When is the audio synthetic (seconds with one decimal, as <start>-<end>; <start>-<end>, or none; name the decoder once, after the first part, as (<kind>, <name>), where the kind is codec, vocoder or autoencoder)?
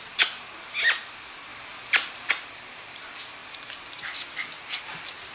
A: 3.4-4.0 (vocoder, BigVGAN v2)